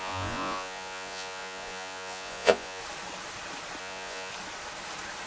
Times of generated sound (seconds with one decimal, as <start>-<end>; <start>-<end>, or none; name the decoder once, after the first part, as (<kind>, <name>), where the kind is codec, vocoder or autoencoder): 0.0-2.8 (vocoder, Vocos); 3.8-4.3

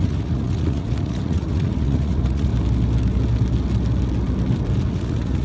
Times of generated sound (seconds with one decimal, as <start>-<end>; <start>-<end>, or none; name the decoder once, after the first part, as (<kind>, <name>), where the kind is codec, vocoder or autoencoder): 0.0-2.5 (vocoder, Vocos); 4.9-5.4

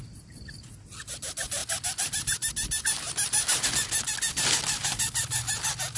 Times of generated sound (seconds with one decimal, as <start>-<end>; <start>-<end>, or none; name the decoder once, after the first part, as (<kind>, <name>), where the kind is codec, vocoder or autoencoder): none

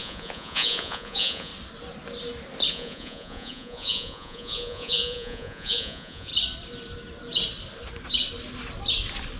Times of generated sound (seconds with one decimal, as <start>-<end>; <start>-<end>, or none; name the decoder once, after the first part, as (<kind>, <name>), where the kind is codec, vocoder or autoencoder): 0.0-1.5 (vocoder, Vocos); 2.7-6.3

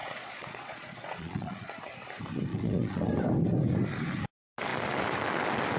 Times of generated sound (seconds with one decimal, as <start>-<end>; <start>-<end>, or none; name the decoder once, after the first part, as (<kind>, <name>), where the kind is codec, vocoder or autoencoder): 0.0-1.8 (vocoder, Vocos); 2.5-3.1

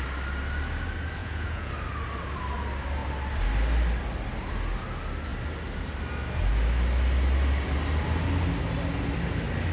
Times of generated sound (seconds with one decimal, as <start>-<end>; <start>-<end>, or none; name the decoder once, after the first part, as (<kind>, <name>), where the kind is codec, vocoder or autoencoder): 1.2-1.7 (vocoder, Vocos)

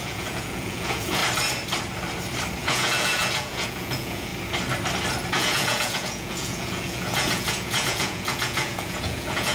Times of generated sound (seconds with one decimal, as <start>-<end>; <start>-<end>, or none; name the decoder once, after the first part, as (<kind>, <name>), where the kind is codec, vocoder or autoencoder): 0.0-1.2 (vocoder, Vocos); 2.6-4.3; 5.3-9.5